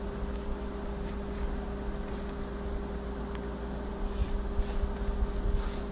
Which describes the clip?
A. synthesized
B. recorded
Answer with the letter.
B